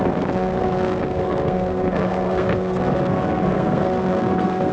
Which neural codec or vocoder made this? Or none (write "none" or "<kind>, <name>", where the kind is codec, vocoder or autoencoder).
codec, SNAC